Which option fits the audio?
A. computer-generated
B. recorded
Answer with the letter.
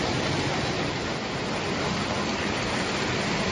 B